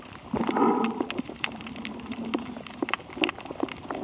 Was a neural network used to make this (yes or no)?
no